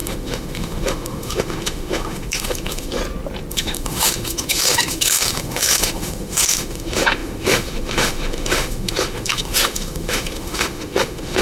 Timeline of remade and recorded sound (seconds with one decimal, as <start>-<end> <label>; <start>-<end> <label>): 0.0-3.0 remade; 3.0-3.5 recorded; 3.5-11.4 remade